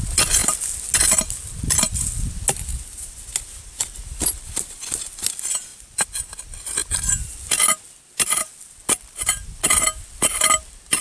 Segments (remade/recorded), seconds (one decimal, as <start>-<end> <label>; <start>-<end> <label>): 0.0-11.0 recorded